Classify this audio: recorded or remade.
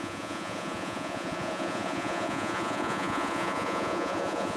remade